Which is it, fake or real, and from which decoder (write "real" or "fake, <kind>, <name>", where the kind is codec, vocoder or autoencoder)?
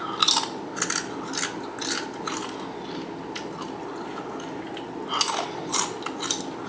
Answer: real